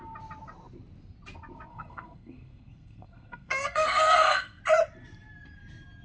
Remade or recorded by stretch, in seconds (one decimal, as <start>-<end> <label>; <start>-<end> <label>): 0.0-1.7 recorded; 1.7-4.6 remade; 4.6-6.0 recorded